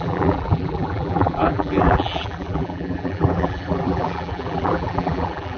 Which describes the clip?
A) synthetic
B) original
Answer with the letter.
A